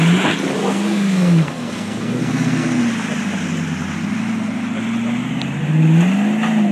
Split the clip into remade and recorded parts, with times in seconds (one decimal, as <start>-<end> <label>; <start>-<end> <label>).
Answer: 0.0-0.6 recorded; 0.6-2.8 remade; 2.8-6.7 recorded